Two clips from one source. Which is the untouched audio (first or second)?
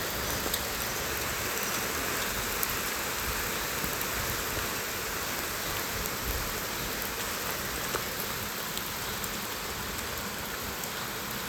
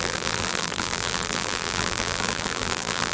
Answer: first